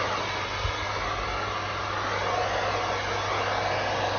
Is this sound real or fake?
real